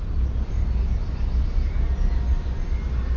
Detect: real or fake real